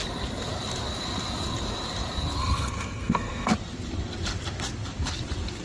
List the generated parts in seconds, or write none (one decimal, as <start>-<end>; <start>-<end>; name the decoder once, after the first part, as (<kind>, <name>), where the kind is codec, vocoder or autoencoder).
2.4-3.5 (codec, SNAC)